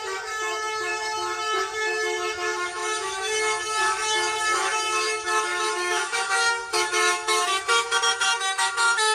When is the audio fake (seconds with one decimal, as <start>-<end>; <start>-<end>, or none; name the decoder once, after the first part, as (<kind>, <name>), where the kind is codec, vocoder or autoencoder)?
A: 0.0-9.1 (autoencoder, DAC-VAE)